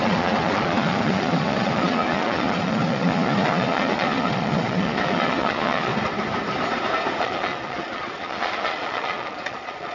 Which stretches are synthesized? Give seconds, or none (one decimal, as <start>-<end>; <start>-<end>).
0.0-5.9; 7.2-9.9